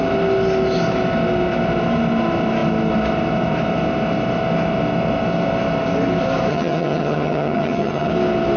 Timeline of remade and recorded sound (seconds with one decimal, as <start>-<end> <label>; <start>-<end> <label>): 0.0-6.5 recorded; 6.5-8.1 remade; 8.1-8.6 recorded